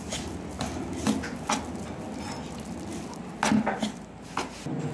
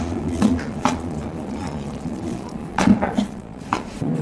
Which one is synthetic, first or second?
second